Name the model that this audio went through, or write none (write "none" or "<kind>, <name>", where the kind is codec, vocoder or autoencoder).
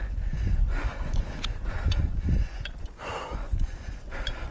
vocoder, Vocos